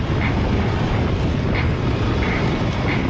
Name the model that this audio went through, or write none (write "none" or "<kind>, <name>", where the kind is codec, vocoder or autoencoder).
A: none